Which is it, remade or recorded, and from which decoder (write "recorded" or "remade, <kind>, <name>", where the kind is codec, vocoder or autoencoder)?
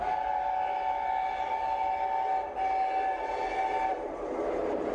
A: recorded